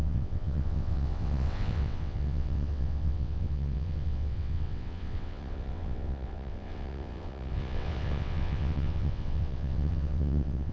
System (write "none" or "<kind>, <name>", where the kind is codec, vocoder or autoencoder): vocoder, WaveNeXt